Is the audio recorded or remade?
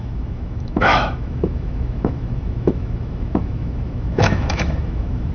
remade